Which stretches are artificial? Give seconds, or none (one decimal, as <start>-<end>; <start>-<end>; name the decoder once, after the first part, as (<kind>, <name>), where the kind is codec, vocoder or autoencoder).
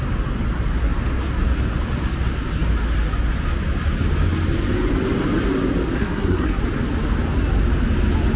6.0-6.6 (codec, SNAC)